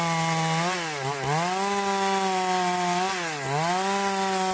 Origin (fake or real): real